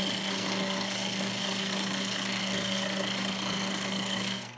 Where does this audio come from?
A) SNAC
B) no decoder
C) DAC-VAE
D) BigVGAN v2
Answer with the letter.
A